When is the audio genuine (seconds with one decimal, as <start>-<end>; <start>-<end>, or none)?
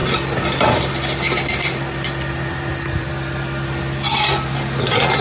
4.2-5.2